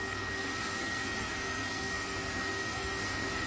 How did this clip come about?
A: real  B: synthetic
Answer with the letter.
B